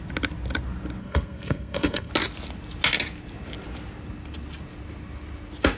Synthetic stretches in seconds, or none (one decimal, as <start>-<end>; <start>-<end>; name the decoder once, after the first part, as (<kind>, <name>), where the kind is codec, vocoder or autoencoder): 1.0-2.1 (codec, SNAC)